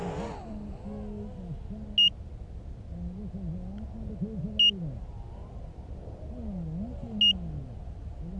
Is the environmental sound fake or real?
real